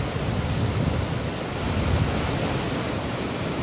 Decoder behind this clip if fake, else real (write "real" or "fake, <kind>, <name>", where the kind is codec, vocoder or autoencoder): real